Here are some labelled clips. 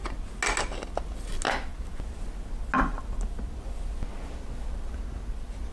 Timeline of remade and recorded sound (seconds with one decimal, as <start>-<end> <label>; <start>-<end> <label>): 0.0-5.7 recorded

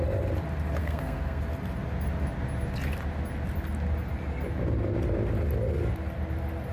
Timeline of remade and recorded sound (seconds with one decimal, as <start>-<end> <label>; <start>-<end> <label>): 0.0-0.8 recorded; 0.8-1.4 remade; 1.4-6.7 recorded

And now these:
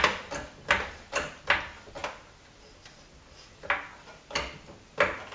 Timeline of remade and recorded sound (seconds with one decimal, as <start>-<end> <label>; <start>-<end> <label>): 0.0-5.3 recorded

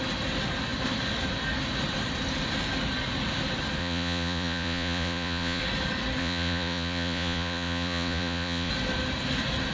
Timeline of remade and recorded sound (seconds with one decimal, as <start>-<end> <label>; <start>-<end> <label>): 0.0-3.8 recorded; 3.8-5.6 remade; 5.6-6.2 recorded; 6.2-8.7 remade; 8.7-9.7 recorded

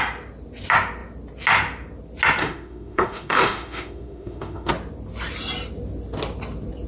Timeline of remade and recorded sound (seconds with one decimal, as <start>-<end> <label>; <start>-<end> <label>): 0.0-2.4 recorded; 2.4-4.7 remade; 4.7-6.9 recorded